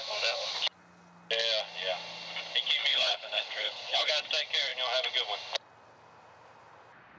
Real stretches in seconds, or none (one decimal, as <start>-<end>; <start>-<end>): 0.0-2.9; 4.1-7.2